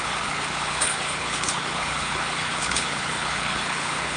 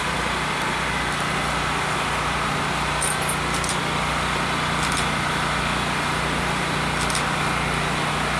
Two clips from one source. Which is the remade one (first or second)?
first